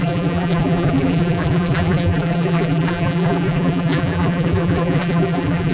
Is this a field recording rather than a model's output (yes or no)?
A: no